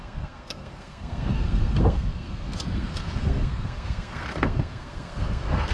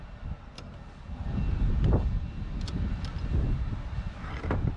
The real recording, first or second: second